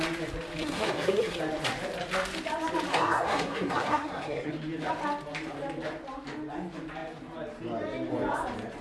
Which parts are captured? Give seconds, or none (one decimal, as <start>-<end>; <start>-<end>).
0.0-0.6; 1.4-2.9; 4.5-8.8